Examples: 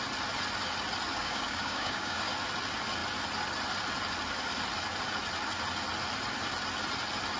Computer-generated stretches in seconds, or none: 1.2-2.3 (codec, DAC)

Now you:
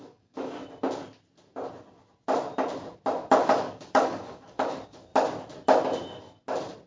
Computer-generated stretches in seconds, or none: 0.0-0.6 (codec, DAC); 3.3-5.1

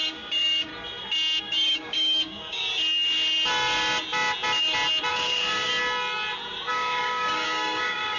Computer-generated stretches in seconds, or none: 0.0-0.7 (codec, DAC); 1.4-2.6; 5.1-5.7; 6.7-8.2